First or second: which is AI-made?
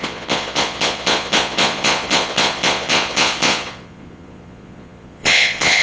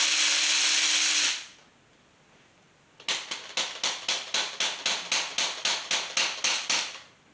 first